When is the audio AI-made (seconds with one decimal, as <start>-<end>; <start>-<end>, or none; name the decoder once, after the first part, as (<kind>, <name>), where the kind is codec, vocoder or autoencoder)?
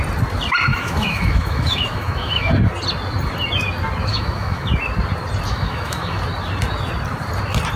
0.7-2.5 (autoencoder, DAC-VAE); 4.1-4.7; 5.5-6.2